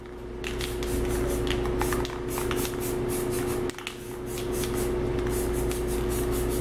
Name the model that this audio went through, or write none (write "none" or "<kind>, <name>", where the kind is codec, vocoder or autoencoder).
none